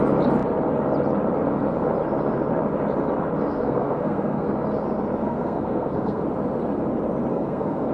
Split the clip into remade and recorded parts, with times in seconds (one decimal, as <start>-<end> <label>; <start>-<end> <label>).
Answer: 0.0-3.5 recorded; 3.5-4.5 remade; 4.5-5.2 recorded; 5.2-6.2 remade; 6.2-7.3 recorded; 7.3-7.9 remade